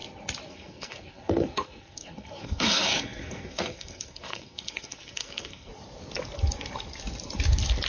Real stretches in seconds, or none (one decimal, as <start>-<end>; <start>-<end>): 0.0-0.5; 5.7-7.9

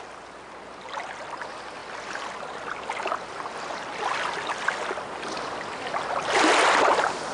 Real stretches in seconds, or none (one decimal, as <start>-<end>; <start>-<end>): 0.0-7.3

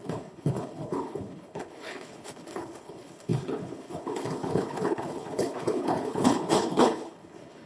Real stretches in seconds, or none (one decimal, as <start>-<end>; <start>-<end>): none

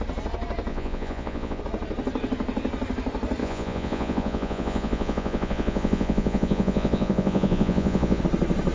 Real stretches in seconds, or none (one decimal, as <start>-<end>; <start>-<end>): 0.0-0.7; 1.6-3.4; 8.2-8.7

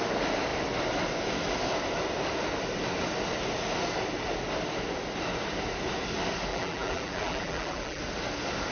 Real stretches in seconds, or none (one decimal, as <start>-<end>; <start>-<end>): 0.0-6.5; 8.0-8.7